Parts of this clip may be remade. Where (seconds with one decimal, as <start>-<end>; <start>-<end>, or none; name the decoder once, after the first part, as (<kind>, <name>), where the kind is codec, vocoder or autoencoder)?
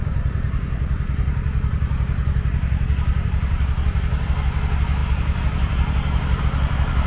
0.0-4.3 (vocoder, BigVGAN v2); 5.0-6.4